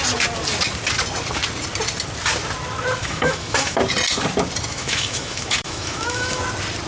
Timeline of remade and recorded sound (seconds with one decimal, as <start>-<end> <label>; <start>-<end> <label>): 0.0-3.0 recorded; 3.0-3.8 remade; 3.8-4.7 recorded; 4.7-6.4 remade; 6.4-6.9 recorded